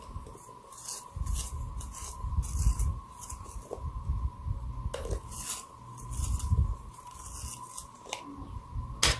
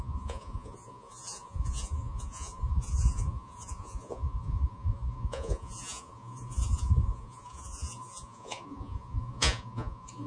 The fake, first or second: second